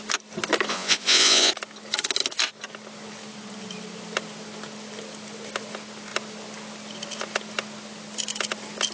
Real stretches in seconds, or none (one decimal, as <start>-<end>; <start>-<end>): 0.0-0.7; 1.5-8.9